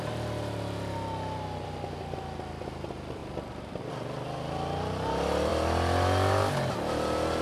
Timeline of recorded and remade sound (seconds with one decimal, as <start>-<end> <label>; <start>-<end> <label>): 0.0-3.2 recorded; 3.2-3.9 remade; 3.9-7.4 recorded